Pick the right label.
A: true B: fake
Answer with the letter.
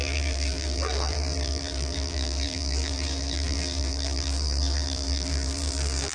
B